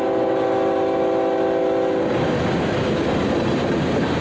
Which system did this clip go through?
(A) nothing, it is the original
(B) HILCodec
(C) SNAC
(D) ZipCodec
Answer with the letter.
A